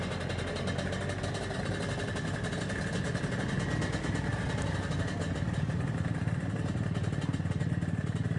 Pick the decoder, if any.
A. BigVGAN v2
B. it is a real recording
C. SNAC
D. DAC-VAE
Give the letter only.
B